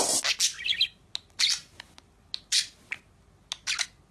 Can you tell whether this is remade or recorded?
recorded